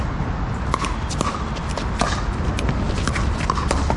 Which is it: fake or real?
real